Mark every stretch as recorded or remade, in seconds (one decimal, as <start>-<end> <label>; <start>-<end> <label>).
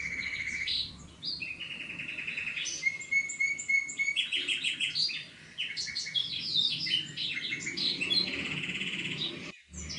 0.0-10.0 recorded